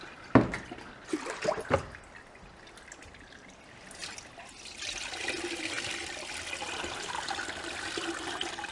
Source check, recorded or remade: recorded